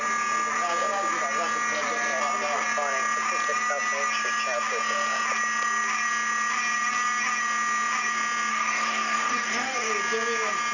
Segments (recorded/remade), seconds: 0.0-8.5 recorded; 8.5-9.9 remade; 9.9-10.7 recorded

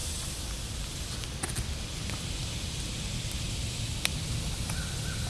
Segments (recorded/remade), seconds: 0.0-5.3 recorded

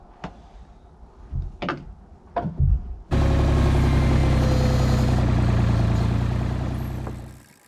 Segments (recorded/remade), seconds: 0.0-7.7 recorded